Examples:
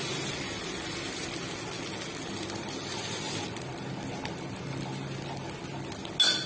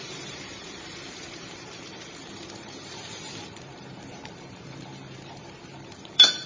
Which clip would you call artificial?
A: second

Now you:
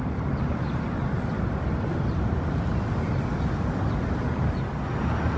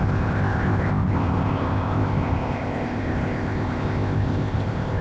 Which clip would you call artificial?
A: second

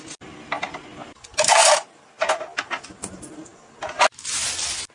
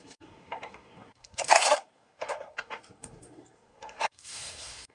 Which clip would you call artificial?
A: second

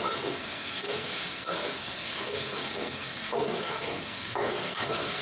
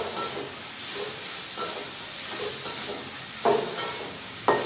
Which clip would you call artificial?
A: first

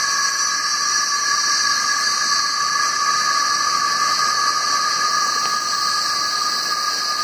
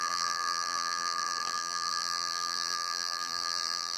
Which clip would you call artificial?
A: second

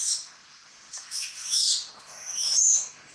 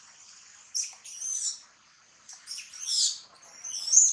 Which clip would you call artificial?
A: first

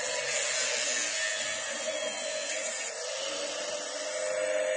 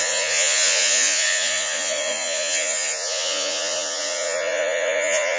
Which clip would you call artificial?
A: second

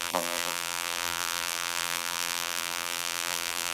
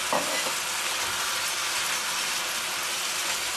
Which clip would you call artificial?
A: first